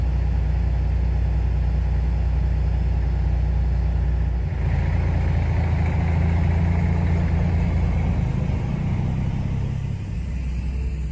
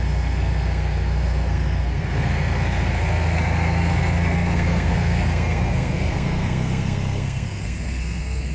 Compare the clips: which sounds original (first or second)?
first